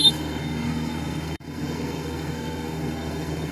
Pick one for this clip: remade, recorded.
remade